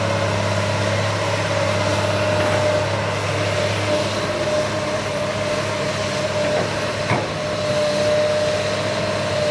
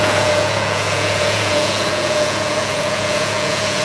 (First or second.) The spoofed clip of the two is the second